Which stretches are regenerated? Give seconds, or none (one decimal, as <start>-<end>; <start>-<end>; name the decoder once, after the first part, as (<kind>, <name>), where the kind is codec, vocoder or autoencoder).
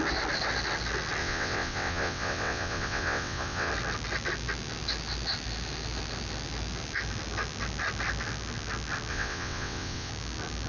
1.2-3.7 (vocoder, WaveNeXt); 9.1-10.1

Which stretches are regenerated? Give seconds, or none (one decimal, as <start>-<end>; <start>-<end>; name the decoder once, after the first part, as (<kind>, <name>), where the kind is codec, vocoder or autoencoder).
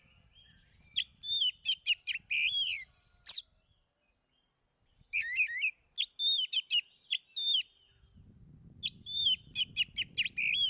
none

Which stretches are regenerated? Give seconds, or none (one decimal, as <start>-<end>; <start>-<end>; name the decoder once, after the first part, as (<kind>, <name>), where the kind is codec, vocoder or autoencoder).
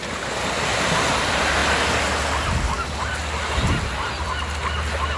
none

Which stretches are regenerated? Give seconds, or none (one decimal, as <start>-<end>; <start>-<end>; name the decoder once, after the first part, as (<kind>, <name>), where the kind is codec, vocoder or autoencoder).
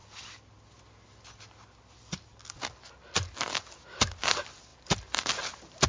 none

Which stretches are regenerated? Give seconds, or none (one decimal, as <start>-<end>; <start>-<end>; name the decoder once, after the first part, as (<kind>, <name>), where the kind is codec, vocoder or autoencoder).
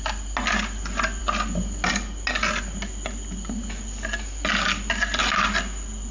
none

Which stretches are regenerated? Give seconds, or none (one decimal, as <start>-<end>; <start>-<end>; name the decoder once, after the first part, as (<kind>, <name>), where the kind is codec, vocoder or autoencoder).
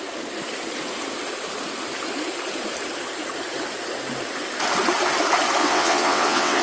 5.6-6.6 (vocoder, WaveNeXt)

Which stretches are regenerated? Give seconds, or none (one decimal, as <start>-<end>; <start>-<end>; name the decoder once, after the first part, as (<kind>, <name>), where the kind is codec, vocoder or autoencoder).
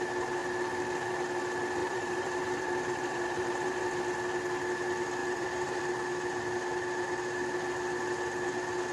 1.8-4.0 (vocoder, BigVGAN v2); 5.2-5.8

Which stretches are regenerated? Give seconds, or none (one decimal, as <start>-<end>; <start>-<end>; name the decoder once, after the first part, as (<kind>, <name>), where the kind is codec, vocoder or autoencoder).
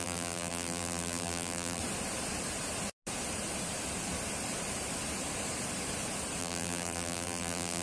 0.0-1.8 (vocoder, BigVGAN v2); 6.4-7.8